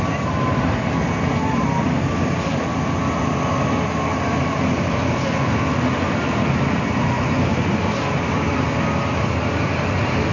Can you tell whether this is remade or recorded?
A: recorded